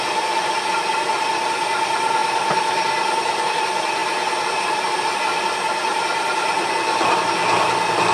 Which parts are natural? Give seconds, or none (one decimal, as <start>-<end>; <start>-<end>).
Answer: 0.0-8.1